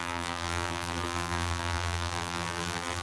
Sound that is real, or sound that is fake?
fake